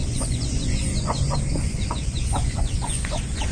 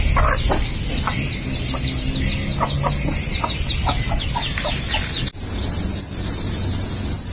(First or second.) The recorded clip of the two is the second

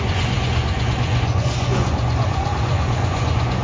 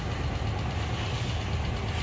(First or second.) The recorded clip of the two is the second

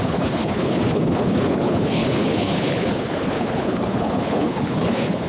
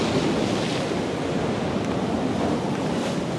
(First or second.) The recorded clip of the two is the second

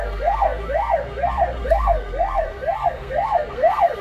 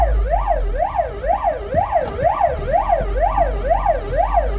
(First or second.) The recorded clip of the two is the second